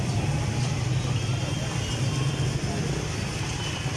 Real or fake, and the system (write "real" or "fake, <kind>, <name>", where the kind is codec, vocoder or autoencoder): real